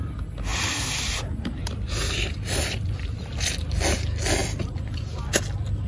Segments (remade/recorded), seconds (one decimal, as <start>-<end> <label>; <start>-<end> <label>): 0.0-0.5 recorded; 0.5-3.3 remade; 3.3-4.4 recorded; 4.4-5.0 remade; 5.0-5.9 recorded